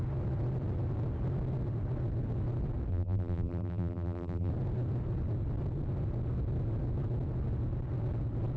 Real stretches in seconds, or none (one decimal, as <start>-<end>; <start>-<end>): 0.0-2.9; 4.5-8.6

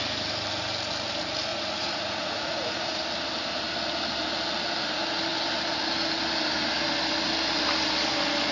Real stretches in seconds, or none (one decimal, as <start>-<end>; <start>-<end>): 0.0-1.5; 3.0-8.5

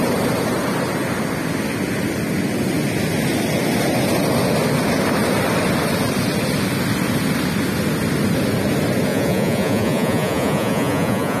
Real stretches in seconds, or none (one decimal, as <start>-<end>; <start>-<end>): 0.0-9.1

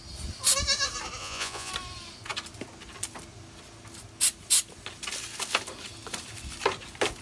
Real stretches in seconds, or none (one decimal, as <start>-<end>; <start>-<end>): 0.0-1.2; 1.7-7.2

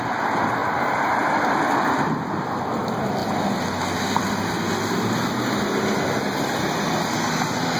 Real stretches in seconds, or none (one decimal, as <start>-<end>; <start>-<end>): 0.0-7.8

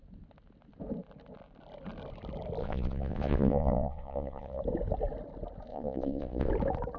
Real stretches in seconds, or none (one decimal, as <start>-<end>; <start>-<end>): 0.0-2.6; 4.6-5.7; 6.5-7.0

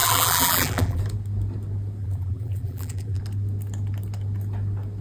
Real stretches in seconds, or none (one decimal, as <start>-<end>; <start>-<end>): 1.0-2.0; 3.2-5.0